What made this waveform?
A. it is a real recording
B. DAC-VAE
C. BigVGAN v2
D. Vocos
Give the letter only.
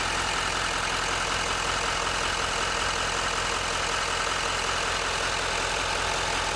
A